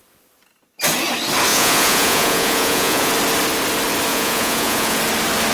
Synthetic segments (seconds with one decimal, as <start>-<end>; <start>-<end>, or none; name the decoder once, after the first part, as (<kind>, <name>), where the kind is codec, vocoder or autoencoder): 1.5-3.1 (vocoder, Vocos); 4.1-5.0